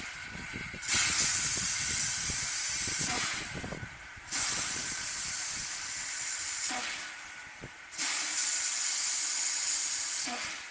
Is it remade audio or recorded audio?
remade